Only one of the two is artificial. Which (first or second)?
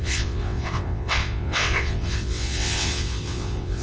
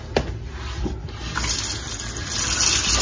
first